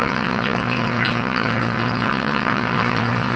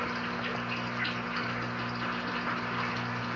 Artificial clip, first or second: first